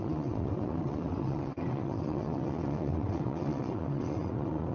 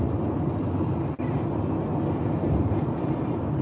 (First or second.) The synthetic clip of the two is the first